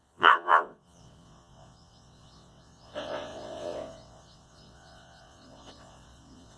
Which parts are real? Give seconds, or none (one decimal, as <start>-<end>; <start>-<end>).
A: none